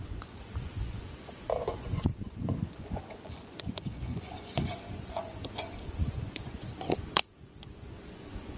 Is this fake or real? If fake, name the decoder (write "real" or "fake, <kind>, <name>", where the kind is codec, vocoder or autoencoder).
fake, vocoder, Vocos